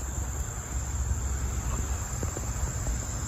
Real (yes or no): yes